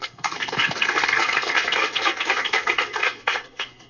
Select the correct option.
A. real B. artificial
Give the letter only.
B